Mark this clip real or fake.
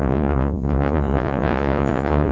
fake